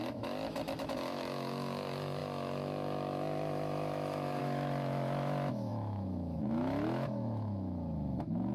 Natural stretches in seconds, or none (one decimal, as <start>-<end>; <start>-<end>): none